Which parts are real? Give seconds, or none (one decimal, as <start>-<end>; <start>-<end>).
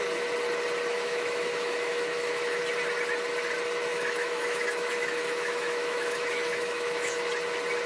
0.0-0.9; 2.6-3.9; 7.3-7.9